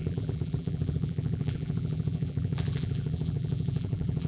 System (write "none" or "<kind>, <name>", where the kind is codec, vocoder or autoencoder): vocoder, BigVGAN v2